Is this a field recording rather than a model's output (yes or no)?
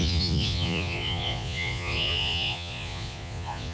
no